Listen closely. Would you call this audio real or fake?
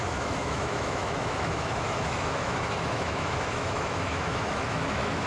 fake